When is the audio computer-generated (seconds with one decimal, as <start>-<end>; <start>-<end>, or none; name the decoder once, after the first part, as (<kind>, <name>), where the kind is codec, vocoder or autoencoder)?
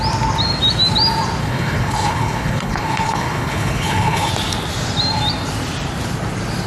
1.4-4.3 (codec, HILCodec)